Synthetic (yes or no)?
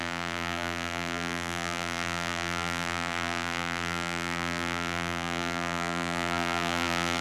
yes